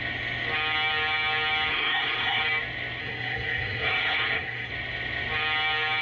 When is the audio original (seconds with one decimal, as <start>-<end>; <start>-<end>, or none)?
0.0-1.7; 2.4-3.0; 4.7-6.0